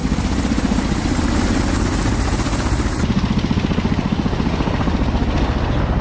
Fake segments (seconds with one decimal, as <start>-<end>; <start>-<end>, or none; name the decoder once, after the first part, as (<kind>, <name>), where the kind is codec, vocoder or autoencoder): none